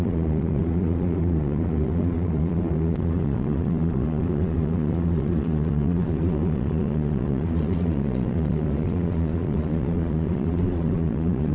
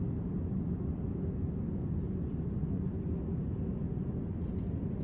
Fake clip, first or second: first